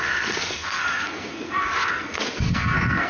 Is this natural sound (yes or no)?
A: no